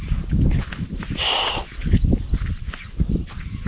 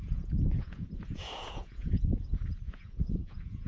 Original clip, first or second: first